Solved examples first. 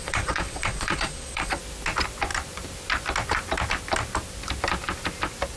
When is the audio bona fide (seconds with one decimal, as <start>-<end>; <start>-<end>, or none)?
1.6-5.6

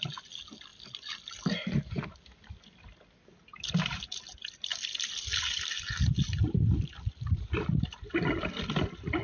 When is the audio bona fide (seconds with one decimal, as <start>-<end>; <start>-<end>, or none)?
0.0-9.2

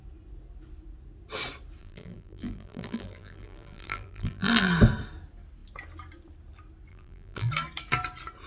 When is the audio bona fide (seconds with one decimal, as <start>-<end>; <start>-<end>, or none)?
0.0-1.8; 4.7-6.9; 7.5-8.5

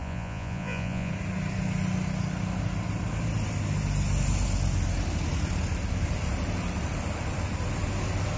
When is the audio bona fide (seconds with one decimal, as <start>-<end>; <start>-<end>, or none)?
1.1-8.4

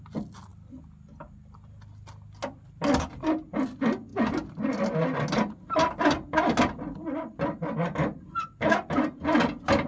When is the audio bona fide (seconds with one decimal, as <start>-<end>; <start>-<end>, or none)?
0.0-9.9

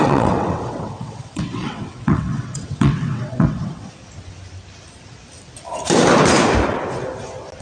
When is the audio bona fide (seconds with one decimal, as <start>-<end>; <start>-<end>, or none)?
4.0-7.6

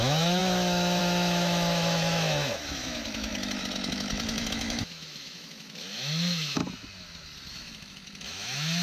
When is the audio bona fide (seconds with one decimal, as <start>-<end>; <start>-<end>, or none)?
6.6-7.5